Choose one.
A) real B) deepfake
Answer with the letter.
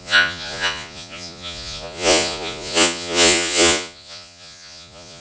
B